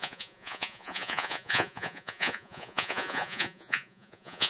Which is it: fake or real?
fake